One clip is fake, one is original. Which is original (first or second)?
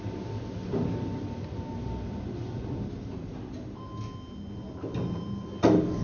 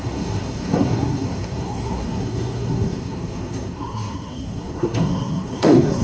first